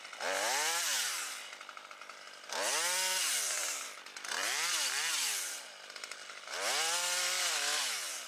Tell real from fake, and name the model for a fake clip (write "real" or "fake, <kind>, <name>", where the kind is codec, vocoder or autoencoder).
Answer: real